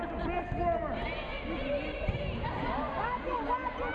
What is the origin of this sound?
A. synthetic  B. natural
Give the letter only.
B